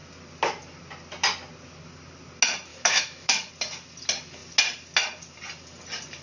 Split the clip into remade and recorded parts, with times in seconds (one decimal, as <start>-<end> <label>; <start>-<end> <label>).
0.0-2.7 recorded; 2.7-3.5 remade; 3.5-6.2 recorded

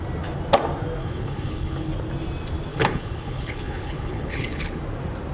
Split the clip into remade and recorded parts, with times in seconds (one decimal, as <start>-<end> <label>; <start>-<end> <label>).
0.0-1.0 recorded; 1.0-1.9 remade; 1.9-2.7 recorded; 2.7-4.8 remade; 4.8-5.3 recorded

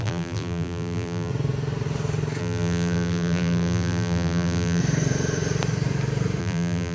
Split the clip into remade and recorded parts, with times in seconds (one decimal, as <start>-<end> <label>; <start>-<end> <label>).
0.0-1.3 remade; 1.3-2.4 recorded; 2.4-4.8 remade; 4.8-6.4 recorded; 6.4-6.9 remade